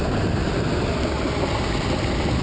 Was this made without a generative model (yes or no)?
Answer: yes